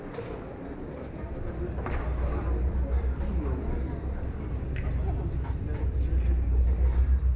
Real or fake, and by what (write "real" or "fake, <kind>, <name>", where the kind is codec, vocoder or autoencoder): real